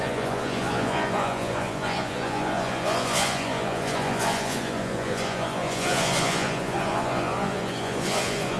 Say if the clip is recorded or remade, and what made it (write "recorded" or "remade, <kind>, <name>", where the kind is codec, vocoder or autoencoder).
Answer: remade, vocoder, Vocos